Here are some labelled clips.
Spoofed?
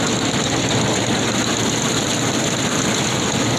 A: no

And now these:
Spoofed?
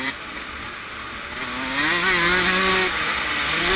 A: no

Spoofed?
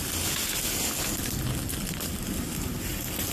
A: no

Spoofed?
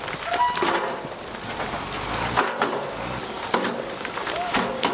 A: no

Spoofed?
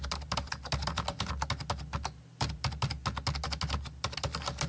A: no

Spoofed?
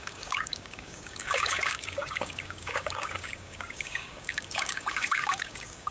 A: yes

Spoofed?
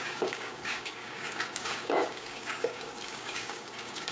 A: yes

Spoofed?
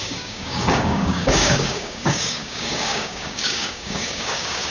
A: yes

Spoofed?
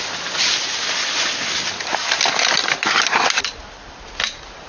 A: no